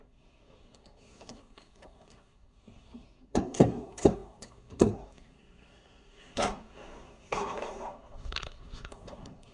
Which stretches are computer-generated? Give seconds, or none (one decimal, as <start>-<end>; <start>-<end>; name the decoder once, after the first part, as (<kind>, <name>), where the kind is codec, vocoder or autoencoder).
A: 0.0-9.5 (codec, SNAC)